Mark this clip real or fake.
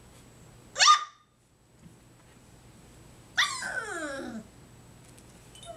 real